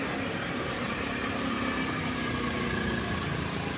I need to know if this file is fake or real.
real